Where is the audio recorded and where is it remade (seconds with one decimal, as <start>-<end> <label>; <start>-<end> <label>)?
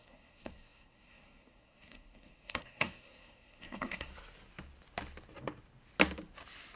0.0-4.1 remade; 4.1-6.8 recorded